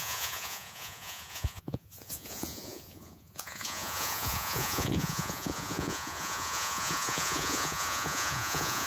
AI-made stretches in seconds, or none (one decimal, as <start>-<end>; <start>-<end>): 0.0-8.9